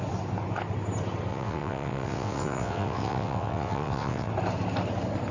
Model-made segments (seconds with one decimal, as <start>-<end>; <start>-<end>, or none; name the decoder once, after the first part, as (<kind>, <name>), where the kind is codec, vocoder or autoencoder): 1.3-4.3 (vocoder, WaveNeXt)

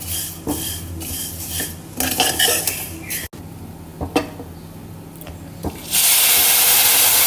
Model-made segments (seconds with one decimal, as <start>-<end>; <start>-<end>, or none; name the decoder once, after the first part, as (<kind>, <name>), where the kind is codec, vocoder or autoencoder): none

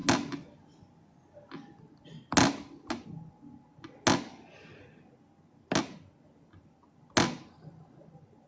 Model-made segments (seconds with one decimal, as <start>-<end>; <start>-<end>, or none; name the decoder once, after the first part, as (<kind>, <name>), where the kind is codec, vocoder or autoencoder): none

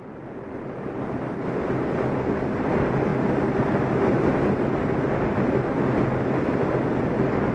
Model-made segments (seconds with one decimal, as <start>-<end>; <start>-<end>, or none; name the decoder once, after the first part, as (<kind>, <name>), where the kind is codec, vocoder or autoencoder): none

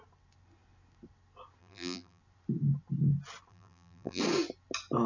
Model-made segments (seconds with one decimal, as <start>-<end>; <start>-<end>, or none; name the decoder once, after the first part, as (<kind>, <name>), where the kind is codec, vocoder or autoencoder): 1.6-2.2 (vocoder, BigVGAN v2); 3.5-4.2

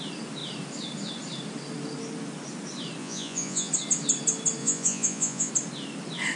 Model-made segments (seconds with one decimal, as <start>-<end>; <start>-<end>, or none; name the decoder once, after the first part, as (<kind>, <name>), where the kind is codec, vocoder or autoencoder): 3.0-3.7 (vocoder, Vocos); 4.6-5.5

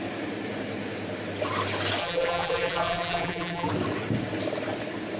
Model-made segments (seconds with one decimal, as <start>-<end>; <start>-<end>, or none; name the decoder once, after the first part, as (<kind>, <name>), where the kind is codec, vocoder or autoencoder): 2.0-3.7 (vocoder, BigVGAN v2)